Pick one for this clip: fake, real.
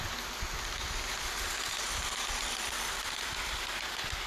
fake